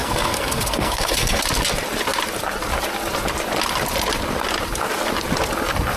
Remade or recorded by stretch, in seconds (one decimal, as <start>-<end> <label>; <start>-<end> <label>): 0.0-1.4 remade; 1.4-6.0 recorded